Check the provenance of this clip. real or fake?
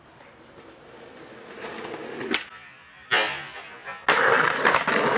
real